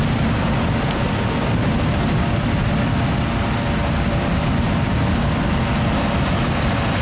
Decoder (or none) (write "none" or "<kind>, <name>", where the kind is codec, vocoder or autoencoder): none